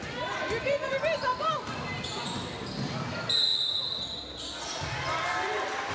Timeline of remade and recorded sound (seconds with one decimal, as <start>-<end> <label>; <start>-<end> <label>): 0.0-5.9 recorded